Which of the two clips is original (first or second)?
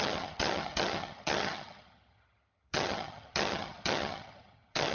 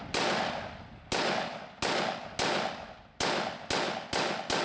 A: second